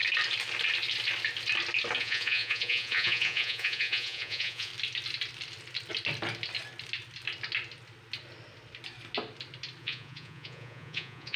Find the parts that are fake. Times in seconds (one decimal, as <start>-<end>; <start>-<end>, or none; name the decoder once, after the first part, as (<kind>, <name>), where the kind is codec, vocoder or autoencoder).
2.0-4.7 (vocoder, Vocos); 9.8-11.4